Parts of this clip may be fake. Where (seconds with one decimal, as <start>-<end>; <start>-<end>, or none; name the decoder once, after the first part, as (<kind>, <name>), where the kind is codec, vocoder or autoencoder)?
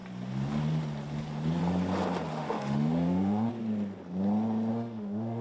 2.3-3.5 (autoencoder, DAC-VAE); 4.7-5.4